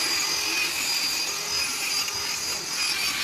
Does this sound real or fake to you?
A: real